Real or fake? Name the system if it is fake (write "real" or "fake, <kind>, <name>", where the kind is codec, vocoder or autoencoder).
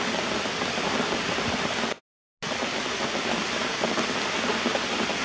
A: real